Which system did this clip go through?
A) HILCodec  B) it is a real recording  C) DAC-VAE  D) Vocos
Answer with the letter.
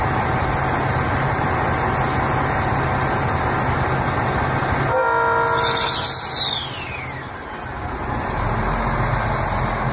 B